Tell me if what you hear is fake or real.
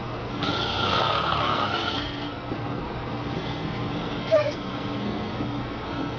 fake